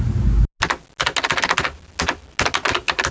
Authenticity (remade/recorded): recorded